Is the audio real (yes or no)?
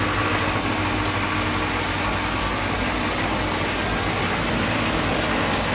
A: yes